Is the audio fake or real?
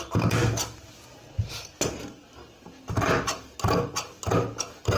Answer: real